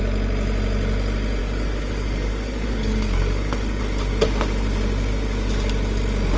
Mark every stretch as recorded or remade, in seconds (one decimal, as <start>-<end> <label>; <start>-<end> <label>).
0.0-1.4 recorded; 1.4-3.8 remade; 3.8-6.4 recorded